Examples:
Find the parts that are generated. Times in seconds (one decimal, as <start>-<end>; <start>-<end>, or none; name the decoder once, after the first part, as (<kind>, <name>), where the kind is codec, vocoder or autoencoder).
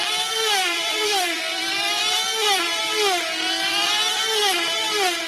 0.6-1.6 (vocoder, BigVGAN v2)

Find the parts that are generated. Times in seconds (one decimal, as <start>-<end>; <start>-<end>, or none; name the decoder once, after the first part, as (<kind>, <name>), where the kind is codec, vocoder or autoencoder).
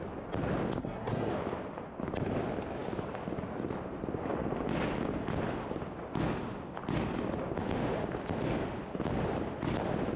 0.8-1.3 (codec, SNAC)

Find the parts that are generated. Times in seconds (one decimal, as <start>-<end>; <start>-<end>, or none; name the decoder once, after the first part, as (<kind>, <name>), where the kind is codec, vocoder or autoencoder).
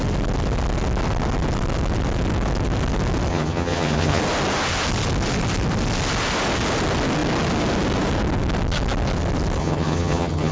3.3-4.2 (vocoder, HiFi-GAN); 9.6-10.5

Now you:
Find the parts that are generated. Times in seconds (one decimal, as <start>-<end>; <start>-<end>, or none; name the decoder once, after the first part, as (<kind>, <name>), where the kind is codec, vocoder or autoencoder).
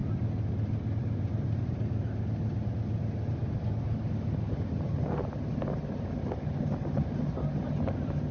0.0-1.8 (vocoder, BigVGAN v2)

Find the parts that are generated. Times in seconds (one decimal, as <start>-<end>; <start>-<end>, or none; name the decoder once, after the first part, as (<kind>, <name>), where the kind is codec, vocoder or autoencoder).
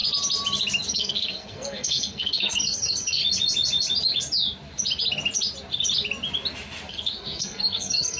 0.9-3.2 (codec, SNAC); 6.9-8.2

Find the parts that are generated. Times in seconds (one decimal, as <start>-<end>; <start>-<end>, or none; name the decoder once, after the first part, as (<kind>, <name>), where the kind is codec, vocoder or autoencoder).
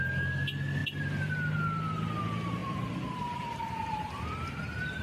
2.6-4.5 (vocoder, BigVGAN v2)